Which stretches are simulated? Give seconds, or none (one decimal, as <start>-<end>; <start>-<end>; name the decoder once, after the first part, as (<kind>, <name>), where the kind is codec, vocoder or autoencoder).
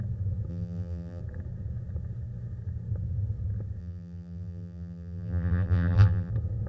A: 0.5-1.2 (vocoder, BigVGAN v2); 3.8-6.3